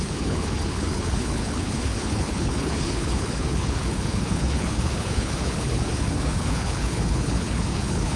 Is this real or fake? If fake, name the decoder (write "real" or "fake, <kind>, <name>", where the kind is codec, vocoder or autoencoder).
fake, codec, HILCodec